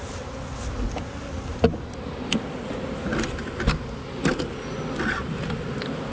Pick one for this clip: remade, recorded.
recorded